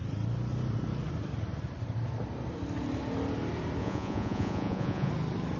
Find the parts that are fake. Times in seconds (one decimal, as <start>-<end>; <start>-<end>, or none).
3.8-5.1